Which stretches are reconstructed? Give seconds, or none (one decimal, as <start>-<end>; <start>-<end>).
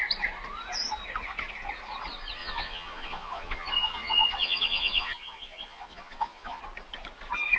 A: 2.4-6.6